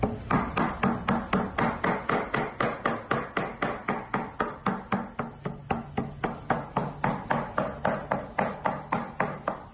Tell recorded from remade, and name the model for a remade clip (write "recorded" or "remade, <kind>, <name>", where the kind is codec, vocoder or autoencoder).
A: recorded